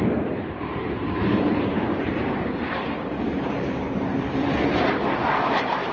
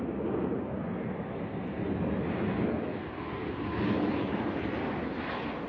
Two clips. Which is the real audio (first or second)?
second